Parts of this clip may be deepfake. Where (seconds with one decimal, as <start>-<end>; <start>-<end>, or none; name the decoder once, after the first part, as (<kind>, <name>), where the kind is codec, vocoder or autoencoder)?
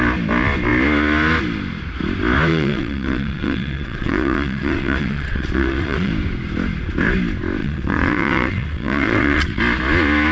2.5-6.1 (vocoder, WaveNeXt); 7.6-9.6